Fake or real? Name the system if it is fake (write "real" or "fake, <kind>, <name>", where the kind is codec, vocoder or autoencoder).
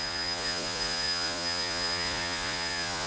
fake, vocoder, Vocos